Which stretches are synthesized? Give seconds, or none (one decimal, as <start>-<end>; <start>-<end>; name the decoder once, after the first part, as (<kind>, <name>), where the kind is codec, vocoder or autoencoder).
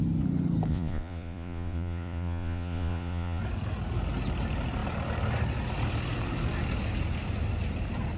0.7-3.4 (vocoder, Vocos)